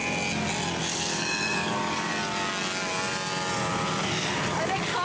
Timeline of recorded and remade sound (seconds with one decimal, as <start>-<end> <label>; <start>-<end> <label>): 0.0-0.8 recorded; 0.8-2.1 remade; 2.1-3.7 recorded; 3.7-5.0 remade